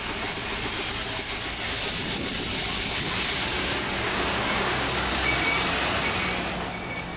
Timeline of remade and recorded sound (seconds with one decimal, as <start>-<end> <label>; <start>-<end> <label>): 0.0-3.7 recorded; 3.7-5.1 remade; 5.1-7.2 recorded